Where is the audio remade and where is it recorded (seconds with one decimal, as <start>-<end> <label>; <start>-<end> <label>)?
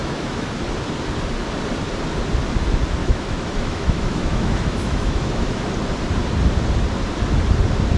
0.0-0.5 remade; 0.5-3.0 recorded; 3.0-5.6 remade; 5.6-8.0 recorded